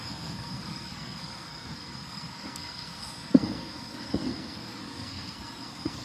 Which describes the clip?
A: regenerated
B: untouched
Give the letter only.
A